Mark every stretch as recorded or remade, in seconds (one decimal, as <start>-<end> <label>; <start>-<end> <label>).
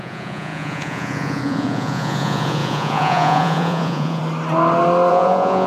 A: 0.0-4.2 remade; 4.2-5.1 recorded; 5.1-5.7 remade